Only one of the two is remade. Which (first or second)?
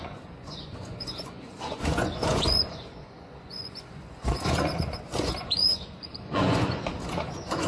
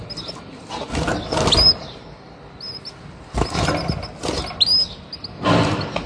first